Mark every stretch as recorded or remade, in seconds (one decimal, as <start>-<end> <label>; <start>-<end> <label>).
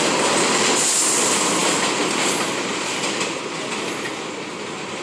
0.0-5.0 recorded